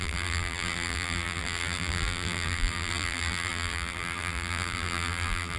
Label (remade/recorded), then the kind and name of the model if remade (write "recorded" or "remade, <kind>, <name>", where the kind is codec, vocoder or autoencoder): remade, vocoder, BigVGAN v2